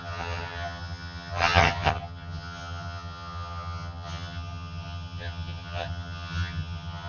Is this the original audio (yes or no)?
no